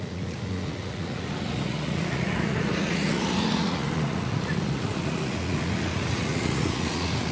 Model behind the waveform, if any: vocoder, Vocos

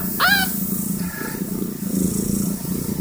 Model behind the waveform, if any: none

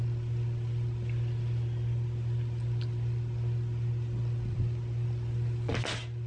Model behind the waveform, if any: none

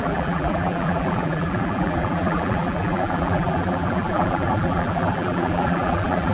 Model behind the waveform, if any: vocoder, BigVGAN v2